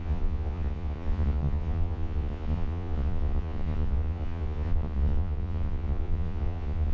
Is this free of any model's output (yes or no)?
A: no